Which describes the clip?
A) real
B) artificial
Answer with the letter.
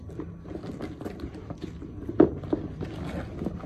A